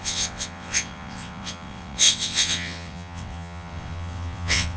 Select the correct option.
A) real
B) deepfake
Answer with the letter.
B